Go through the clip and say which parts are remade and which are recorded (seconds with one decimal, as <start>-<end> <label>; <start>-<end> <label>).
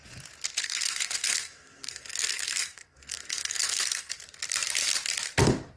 0.0-0.6 recorded; 0.6-4.1 remade; 4.1-5.8 recorded